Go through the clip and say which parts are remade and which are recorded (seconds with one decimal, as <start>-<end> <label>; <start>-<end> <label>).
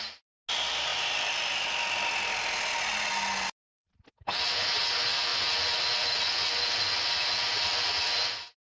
0.0-8.7 recorded